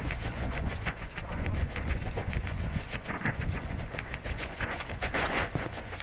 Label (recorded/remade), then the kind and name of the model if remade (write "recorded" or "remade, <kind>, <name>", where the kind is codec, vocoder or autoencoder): remade, vocoder, Vocos